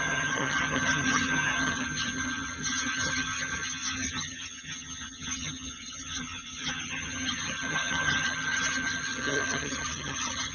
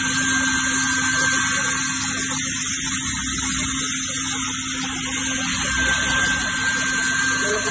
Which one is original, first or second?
second